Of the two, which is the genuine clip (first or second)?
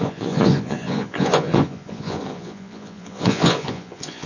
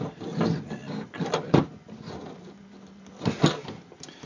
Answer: second